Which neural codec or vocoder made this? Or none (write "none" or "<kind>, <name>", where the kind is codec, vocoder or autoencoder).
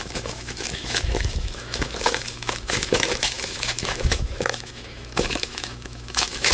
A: autoencoder, DAC-VAE